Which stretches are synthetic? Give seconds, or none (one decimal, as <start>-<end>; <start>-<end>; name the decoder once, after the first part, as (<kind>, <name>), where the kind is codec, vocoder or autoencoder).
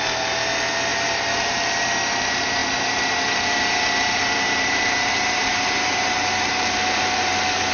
0.9-1.7 (vocoder, BigVGAN v2); 2.6-7.2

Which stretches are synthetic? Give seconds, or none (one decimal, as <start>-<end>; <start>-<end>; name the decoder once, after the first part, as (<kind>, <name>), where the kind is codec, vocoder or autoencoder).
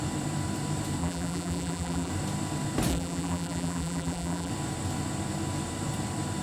1.0-2.1 (vocoder, BigVGAN v2); 2.9-4.5